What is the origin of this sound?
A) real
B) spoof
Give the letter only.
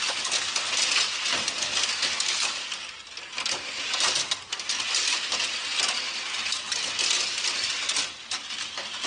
A